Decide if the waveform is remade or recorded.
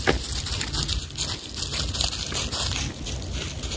recorded